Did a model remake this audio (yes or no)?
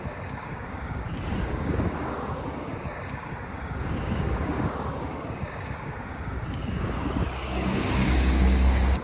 yes